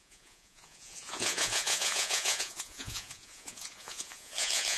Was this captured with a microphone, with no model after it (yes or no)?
no